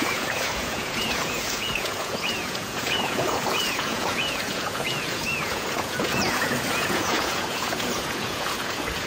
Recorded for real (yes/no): no